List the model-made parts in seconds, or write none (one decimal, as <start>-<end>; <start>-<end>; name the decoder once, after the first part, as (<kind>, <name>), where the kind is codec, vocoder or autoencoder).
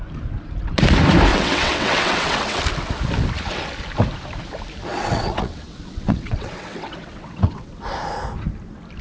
1.3-2.6 (vocoder, WaveNeXt); 4.9-7.7